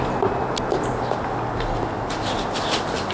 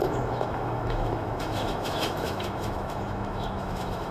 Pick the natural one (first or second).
first